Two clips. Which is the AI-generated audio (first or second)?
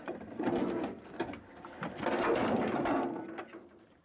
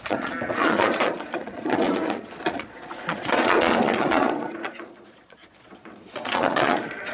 second